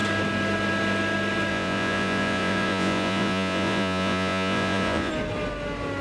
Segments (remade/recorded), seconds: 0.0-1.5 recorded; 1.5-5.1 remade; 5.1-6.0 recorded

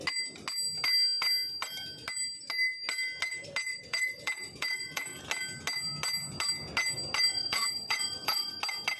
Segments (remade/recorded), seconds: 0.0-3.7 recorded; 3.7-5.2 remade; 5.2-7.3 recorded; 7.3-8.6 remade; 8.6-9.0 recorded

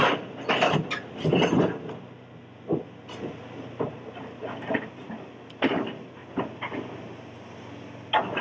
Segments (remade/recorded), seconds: 0.0-8.4 recorded

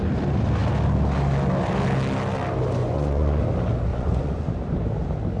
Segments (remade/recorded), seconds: 0.0-2.8 recorded; 2.8-3.4 remade; 3.4-3.9 recorded; 3.9-4.5 remade; 4.5-5.4 recorded

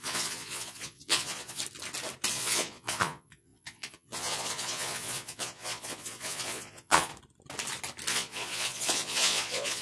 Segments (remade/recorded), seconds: 0.0-1.6 remade; 1.6-2.3 recorded; 2.3-7.1 remade; 7.1-8.1 recorded; 8.1-9.8 remade

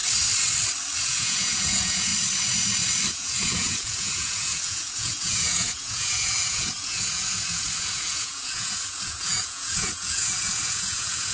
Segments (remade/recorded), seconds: 0.0-1.0 recorded; 1.0-2.1 remade; 2.1-3.1 recorded; 3.1-11.3 remade

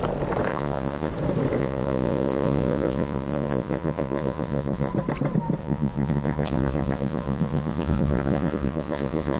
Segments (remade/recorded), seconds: 0.0-0.5 recorded; 0.5-1.1 remade; 1.1-1.6 recorded; 1.6-4.9 remade; 4.9-5.6 recorded; 5.6-9.4 remade

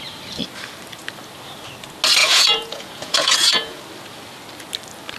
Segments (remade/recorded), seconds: 0.0-2.2 recorded; 2.2-3.8 remade; 3.8-5.2 recorded